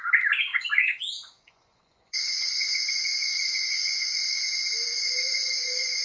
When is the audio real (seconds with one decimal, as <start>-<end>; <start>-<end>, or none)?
0.0-0.5; 2.3-3.2; 4.4-6.0